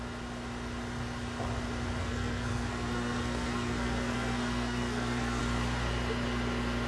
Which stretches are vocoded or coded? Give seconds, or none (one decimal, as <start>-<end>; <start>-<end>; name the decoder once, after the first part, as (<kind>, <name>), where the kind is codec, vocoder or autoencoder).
2.0-5.4 (codec, SNAC)